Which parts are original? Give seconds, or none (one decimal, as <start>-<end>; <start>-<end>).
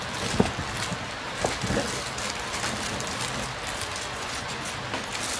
0.0-4.1; 4.7-5.4